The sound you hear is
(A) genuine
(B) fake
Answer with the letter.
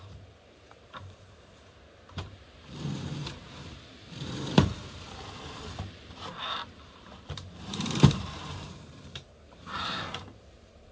B